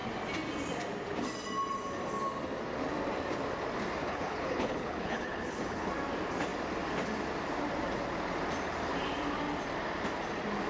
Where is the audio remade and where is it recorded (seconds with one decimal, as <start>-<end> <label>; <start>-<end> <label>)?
0.0-4.0 recorded; 4.0-5.9 remade; 5.9-10.7 recorded